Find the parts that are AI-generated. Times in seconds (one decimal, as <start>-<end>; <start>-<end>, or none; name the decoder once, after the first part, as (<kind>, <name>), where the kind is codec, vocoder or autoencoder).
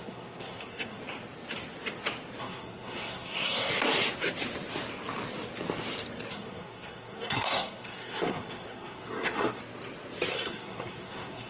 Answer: 0.0-1.0 (codec, SNAC); 2.4-3.7; 6.3-9.6; 10.3-11.5